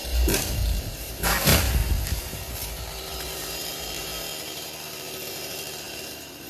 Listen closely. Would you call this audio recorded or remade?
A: remade